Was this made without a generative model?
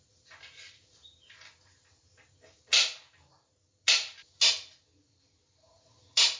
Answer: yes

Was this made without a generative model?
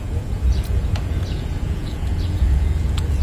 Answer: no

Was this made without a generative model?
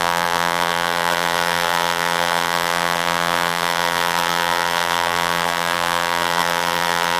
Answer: no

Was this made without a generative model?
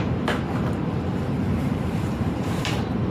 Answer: no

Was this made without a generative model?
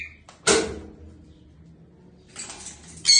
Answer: yes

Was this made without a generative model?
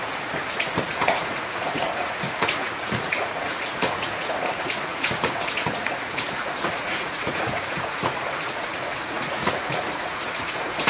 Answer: no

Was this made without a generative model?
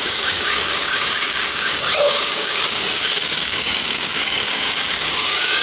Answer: no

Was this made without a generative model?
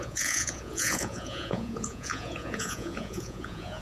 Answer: no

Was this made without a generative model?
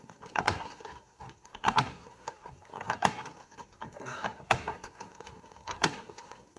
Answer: no